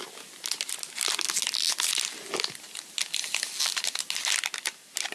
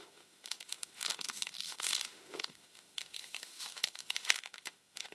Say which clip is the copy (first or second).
second